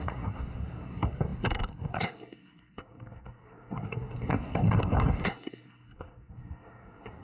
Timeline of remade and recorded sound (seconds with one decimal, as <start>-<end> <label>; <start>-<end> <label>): 0.0-7.2 remade